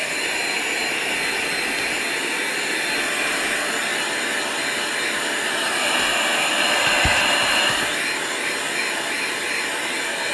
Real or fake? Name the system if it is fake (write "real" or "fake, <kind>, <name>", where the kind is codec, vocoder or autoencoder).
real